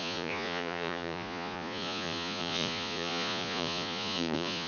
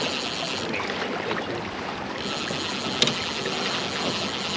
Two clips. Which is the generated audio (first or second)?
first